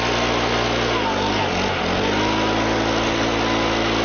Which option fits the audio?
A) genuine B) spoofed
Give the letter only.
A